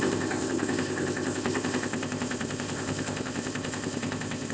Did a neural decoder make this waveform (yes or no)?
yes